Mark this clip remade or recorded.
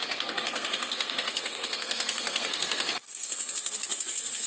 remade